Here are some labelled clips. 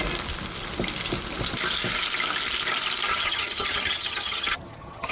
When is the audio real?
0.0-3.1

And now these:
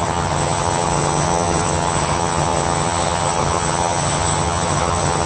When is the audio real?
none

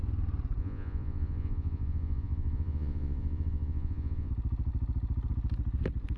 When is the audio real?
0.0-0.6; 4.3-6.2